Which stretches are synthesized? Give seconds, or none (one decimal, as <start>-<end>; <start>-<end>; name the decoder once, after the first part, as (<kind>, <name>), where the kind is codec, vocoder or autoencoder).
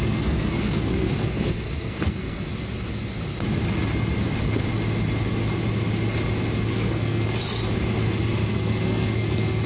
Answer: 0.0-2.5 (codec, SNAC); 6.7-7.4; 8.5-9.7